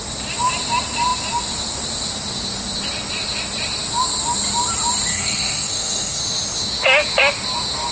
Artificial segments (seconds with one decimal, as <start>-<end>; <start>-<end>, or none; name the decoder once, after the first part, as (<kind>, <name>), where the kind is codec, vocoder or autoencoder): 5.1-6.2 (codec, SNAC)